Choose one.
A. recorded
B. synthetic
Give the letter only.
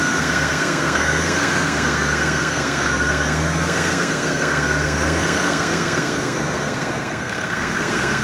B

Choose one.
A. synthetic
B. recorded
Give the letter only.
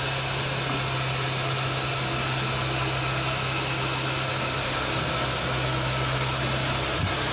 B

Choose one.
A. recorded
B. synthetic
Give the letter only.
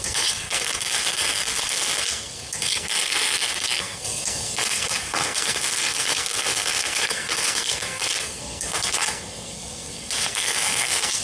B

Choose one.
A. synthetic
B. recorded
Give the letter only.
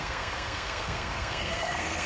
A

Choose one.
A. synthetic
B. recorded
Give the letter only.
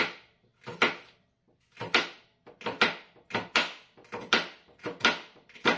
B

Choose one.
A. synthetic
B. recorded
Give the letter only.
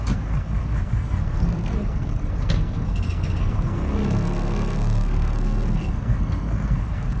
A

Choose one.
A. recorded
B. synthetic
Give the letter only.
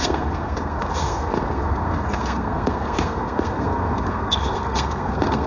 B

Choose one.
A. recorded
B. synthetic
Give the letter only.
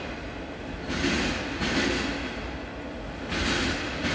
A